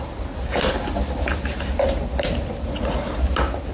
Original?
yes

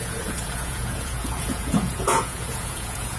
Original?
no